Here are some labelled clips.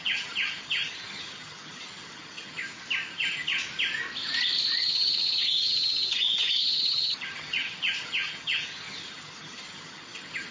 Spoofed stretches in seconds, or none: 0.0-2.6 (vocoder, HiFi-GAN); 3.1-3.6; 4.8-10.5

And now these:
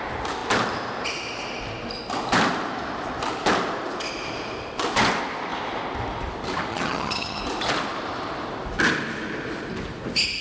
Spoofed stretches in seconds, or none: 6.7-7.4 (vocoder, HiFi-GAN)

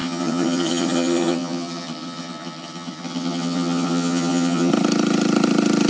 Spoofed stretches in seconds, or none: 0.0-4.7 (vocoder, HiFi-GAN)

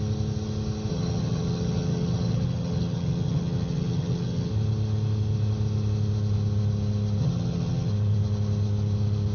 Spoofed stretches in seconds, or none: 0.9-4.5 (vocoder, HiFi-GAN); 7.2-7.9

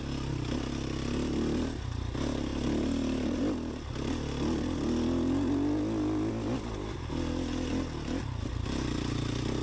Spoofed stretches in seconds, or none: none

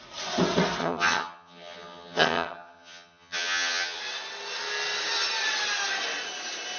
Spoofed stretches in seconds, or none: 0.8-4.0 (vocoder, HiFi-GAN)

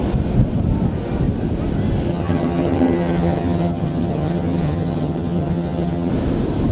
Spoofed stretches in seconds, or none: 2.1-6.1 (vocoder, HiFi-GAN)